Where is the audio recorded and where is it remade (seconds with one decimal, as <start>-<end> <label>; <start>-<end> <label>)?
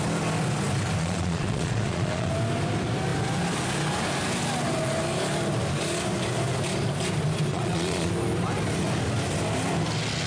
0.0-1.0 recorded; 1.0-2.3 remade; 2.3-7.5 recorded; 7.5-8.1 remade; 8.1-10.3 recorded